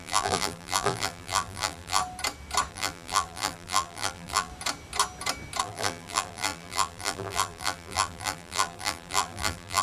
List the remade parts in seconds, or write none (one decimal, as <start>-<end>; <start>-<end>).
0.0-2.0; 2.7-4.5; 5.6-9.8